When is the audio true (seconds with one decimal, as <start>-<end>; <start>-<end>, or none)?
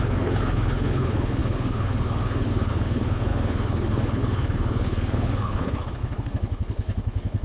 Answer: none